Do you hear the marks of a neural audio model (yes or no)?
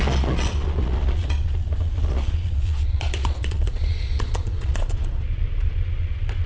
yes